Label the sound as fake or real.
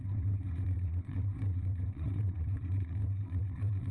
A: fake